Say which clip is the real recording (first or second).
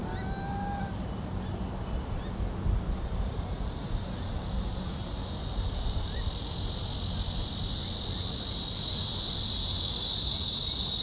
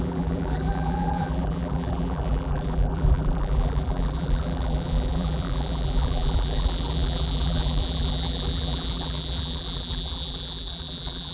first